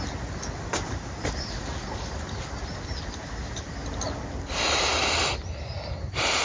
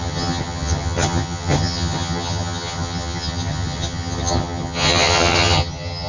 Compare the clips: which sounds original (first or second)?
first